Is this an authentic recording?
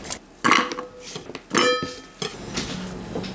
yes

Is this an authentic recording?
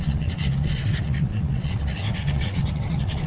no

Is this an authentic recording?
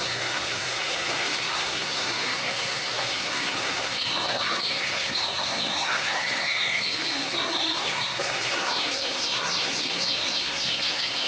no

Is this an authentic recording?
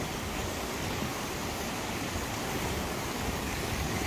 no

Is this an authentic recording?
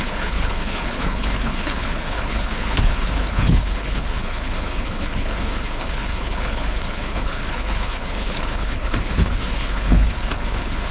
no